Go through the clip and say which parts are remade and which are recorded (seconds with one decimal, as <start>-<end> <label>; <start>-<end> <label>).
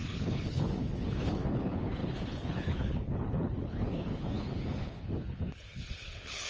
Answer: 0.0-6.5 remade